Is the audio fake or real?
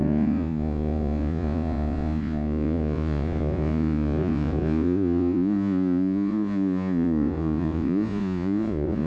fake